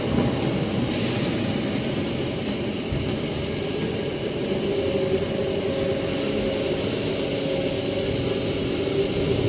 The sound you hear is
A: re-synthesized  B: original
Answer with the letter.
B